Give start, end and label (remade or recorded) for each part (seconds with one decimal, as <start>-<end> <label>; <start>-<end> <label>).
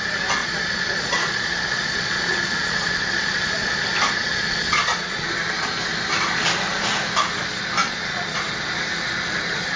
0.0-0.4 recorded; 0.4-3.7 remade; 3.7-4.2 recorded; 4.2-5.3 remade; 5.3-7.8 recorded; 7.8-8.4 remade; 8.4-9.8 recorded